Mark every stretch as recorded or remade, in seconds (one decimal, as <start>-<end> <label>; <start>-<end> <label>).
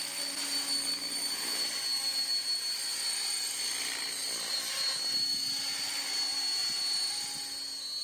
0.0-8.0 recorded